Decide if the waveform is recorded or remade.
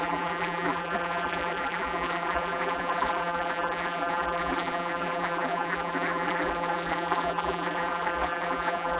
remade